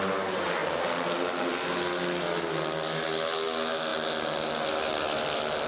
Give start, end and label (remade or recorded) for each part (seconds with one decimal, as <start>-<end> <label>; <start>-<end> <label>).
0.0-5.7 recorded